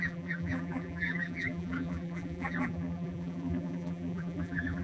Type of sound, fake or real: fake